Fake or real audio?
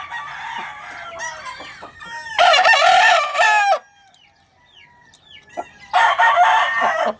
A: real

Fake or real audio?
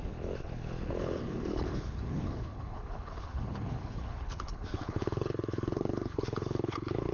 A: fake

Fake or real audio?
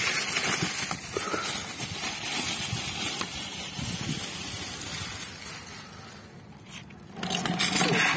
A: real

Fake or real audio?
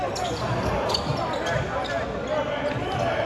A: real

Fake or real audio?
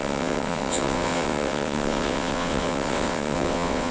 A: fake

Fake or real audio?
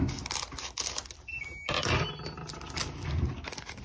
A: real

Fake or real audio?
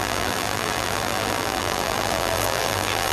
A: fake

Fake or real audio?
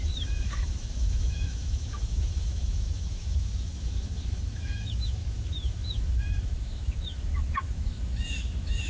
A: fake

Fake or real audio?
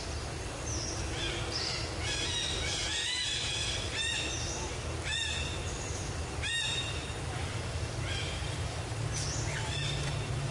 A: real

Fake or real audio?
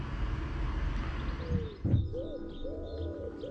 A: real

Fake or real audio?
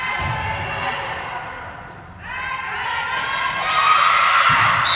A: real